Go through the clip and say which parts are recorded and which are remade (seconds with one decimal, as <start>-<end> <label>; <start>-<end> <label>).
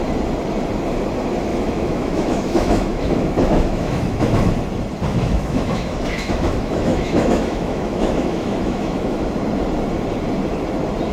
0.0-1.5 recorded; 1.5-4.5 remade; 4.5-5.1 recorded; 5.1-9.3 remade; 9.3-11.1 recorded